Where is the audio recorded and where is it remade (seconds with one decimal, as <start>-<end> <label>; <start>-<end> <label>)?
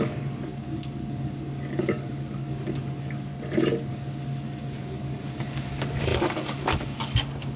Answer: 0.0-3.3 remade; 3.3-3.9 recorded; 3.9-7.6 remade